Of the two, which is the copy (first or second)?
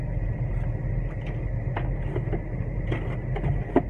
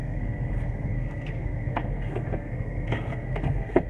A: second